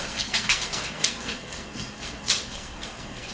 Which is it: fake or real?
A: fake